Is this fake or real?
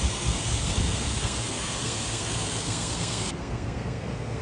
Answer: fake